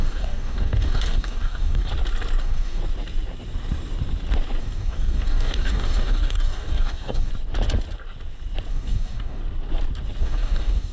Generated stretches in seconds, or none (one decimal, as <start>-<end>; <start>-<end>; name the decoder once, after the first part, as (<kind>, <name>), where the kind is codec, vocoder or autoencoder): 0.0-1.9 (codec, DAC); 2.4-2.8; 4.6-7.3; 8.7-9.4; 10.2-10.9